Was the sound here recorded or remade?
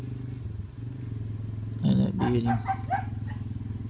recorded